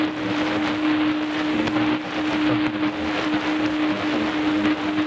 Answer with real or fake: real